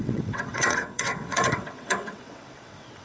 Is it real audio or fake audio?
fake